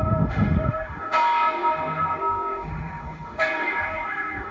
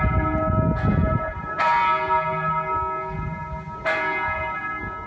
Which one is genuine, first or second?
second